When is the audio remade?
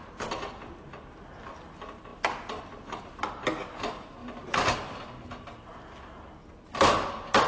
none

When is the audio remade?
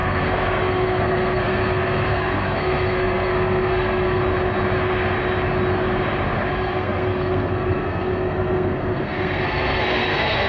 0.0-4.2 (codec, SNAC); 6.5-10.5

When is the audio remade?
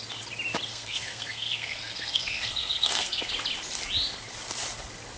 0.7-3.3 (codec, SNAC)